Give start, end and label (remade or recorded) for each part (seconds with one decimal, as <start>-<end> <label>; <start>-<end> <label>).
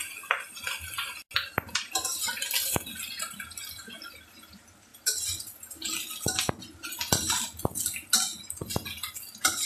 0.0-9.7 recorded